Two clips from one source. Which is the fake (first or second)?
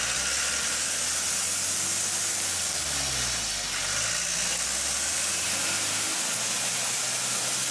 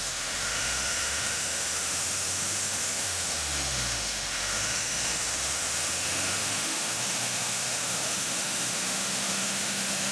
second